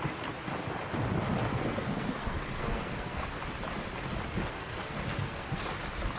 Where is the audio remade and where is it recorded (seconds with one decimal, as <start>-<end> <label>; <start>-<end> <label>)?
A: 0.0-1.5 recorded; 1.5-3.4 remade; 3.4-4.4 recorded; 4.4-5.6 remade; 5.6-6.2 recorded